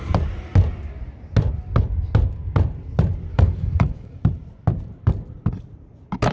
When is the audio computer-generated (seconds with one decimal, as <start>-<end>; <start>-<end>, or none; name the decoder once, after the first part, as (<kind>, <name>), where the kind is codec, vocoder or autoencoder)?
3.3-4.2 (codec, DAC)